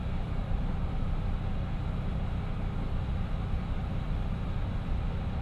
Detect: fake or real real